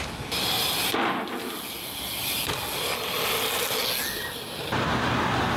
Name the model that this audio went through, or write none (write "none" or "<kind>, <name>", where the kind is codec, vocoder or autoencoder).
none